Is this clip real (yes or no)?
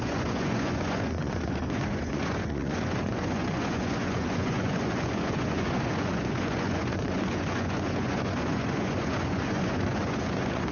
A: no